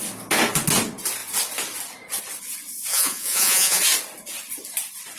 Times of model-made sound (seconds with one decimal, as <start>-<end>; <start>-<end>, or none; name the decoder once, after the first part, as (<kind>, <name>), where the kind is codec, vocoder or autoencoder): 2.9-3.8 (vocoder, Vocos)